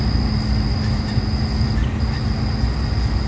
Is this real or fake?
real